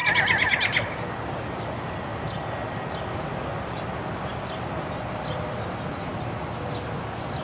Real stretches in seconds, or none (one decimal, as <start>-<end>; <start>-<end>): 0.0-7.4

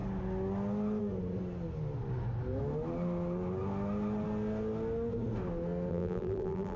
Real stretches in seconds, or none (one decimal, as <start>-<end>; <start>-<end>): 0.0-5.9

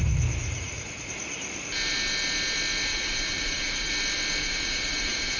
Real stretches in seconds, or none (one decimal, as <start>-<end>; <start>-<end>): 0.0-0.4; 1.1-2.9; 3.9-4.4

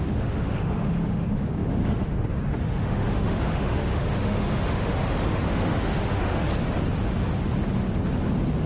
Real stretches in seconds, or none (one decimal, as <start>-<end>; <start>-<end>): 6.5-8.7

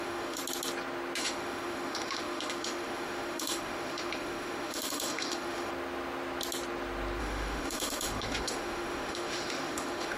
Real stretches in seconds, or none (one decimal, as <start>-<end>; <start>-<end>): 0.4-1.2; 5.7-7.2

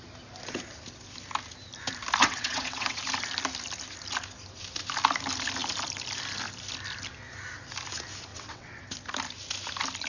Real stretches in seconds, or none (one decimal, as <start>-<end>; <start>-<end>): 0.0-2.2; 3.0-8.3; 8.8-10.1

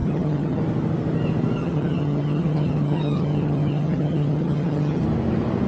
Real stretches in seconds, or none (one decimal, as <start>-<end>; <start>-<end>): 0.6-1.6; 5.0-5.7

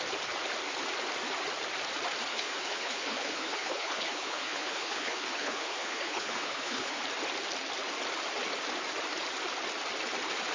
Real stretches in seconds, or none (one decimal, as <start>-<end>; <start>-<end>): 0.0-2.3; 7.0-10.5